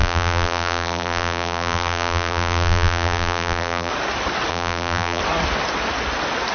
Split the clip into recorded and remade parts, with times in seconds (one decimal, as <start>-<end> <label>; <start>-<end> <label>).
0.0-3.9 remade; 3.9-4.5 recorded; 4.5-5.2 remade; 5.2-6.5 recorded